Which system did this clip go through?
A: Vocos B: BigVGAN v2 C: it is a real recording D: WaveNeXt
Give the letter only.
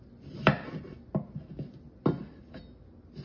C